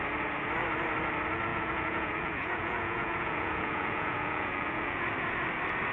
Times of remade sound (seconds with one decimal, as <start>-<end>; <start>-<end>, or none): 1.5-5.0